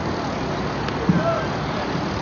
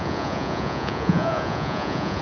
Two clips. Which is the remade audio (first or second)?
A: second